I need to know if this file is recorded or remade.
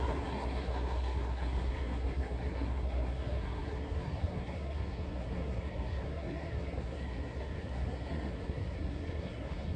remade